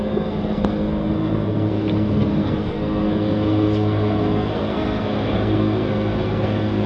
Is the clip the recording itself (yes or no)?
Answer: no